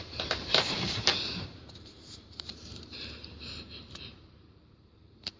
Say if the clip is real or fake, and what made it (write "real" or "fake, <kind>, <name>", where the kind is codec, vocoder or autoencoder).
fake, vocoder, BigVGAN v2